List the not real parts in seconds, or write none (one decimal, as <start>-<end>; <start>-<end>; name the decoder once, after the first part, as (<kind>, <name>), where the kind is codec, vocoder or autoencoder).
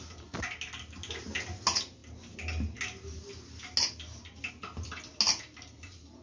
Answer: none